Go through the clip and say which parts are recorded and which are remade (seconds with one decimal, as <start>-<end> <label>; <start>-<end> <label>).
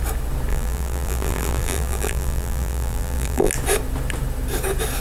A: 0.0-0.5 recorded; 0.5-3.5 remade; 3.5-5.0 recorded